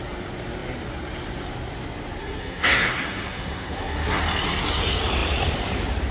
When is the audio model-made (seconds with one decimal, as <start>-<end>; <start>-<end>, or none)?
2.2-4.2